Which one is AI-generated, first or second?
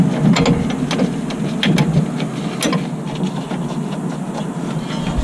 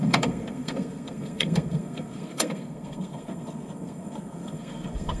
second